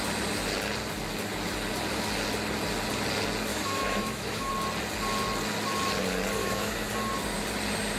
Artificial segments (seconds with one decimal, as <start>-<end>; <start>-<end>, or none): 3.5-4.5; 6.4-6.9